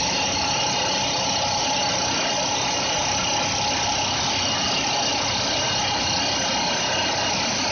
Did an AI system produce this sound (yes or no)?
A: no